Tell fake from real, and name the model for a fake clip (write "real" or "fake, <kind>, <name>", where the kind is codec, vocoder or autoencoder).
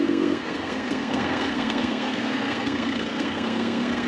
fake, codec, SNAC